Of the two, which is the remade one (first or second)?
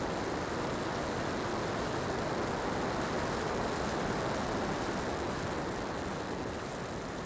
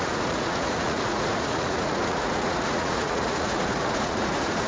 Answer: second